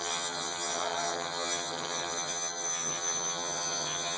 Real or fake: fake